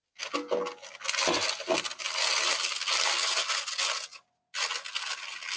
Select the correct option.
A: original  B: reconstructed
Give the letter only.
A